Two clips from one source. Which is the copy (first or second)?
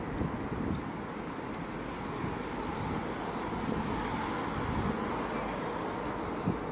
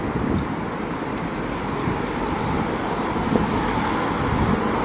second